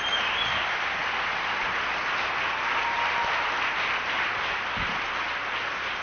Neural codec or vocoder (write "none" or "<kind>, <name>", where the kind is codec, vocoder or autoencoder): none